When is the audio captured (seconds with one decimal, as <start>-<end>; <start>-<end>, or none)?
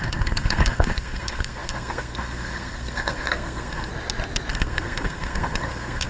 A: 3.9-4.5